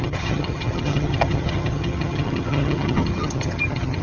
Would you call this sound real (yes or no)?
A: no